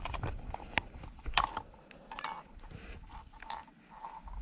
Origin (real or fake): real